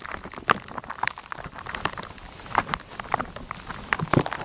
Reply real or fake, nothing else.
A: real